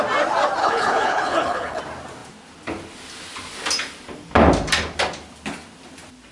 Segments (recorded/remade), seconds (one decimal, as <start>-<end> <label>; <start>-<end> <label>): 0.0-0.6 recorded; 0.6-1.8 remade; 1.8-6.3 recorded